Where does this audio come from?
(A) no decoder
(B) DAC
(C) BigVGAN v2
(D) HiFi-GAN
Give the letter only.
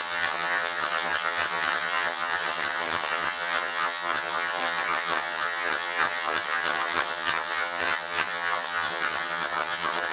D